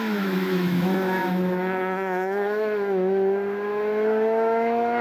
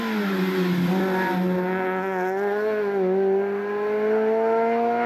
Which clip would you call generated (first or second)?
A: first